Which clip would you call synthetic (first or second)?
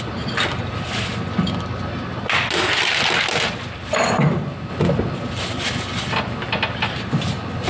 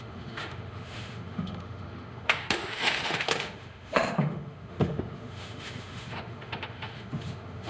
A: second